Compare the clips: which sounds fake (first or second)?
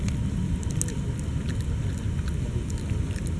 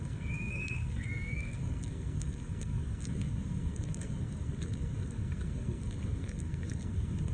second